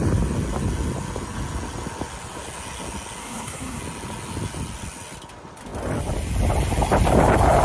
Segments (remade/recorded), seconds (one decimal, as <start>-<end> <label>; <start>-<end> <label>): 0.0-3.2 recorded; 3.2-3.8 remade; 3.8-7.6 recorded

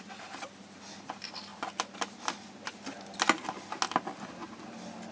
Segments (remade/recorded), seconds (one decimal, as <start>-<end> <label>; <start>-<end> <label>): 0.0-5.1 recorded

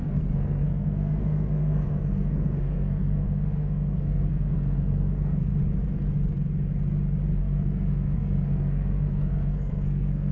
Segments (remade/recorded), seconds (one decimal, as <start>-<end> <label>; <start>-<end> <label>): 0.0-5.5 remade; 5.5-7.4 recorded; 7.4-10.3 remade

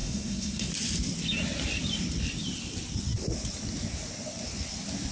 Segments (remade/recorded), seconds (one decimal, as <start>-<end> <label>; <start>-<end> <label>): 0.0-0.7 remade; 0.7-5.1 recorded